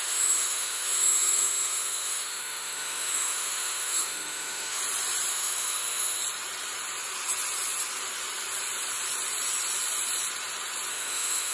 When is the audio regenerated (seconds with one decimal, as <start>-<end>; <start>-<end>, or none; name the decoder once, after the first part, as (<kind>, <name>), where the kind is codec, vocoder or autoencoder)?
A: 0.0-4.8 (autoencoder, DAC-VAE); 5.3-6.2; 10.9-11.5